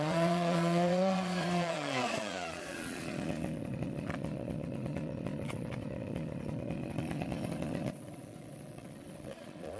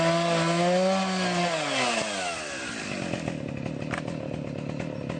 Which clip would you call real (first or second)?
second